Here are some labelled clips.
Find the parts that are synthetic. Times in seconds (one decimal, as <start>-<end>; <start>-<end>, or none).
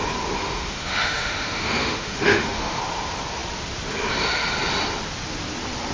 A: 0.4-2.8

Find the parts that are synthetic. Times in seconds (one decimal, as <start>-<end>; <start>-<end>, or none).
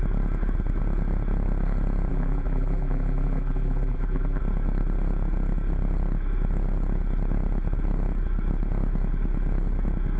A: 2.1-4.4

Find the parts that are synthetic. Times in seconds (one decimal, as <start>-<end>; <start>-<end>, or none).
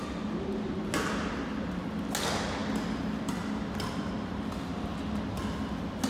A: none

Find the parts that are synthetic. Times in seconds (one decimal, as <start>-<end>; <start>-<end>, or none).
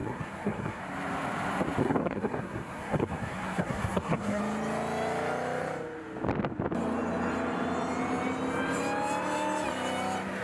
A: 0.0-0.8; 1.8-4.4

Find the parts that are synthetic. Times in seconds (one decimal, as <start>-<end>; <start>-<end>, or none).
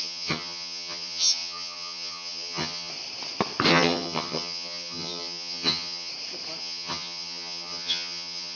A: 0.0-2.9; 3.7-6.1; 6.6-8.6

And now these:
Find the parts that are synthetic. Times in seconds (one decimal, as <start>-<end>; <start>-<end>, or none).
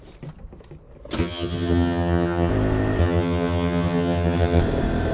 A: 1.2-2.5; 3.0-4.6